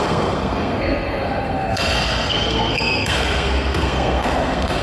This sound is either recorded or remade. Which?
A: remade